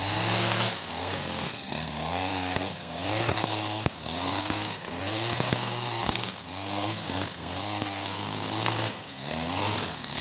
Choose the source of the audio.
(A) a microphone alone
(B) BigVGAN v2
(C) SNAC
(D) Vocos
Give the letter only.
C